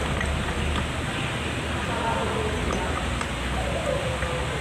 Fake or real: real